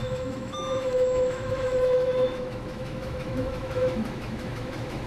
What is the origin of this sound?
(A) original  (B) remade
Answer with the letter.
B